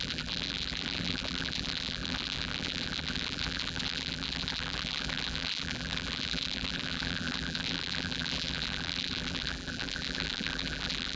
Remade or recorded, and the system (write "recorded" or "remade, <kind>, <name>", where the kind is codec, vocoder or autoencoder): remade, vocoder, BigVGAN v2